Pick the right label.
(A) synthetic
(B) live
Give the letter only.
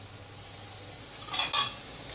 B